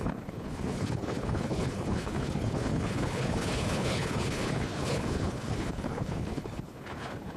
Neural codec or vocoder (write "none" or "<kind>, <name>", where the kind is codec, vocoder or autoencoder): codec, HILCodec